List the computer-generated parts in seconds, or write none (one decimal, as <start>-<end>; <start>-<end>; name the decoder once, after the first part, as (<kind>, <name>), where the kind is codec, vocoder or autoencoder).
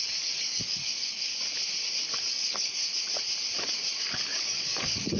0.0-1.3 (codec, DAC); 2.3-2.8; 4.0-5.2